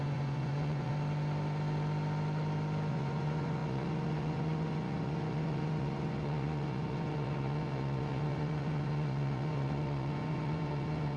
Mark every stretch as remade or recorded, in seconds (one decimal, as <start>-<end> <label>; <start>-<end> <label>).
0.0-0.9 remade; 0.9-2.9 recorded; 2.9-11.2 remade